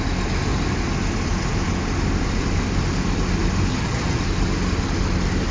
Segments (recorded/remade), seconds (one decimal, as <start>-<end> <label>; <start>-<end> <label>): 0.0-3.7 recorded; 3.7-4.2 remade; 4.2-5.5 recorded